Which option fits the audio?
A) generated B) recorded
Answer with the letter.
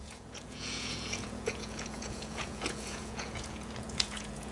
A